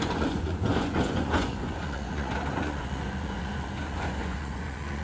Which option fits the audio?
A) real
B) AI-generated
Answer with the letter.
B